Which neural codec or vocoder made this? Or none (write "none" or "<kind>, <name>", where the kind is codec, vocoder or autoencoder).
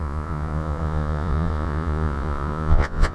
vocoder, Vocos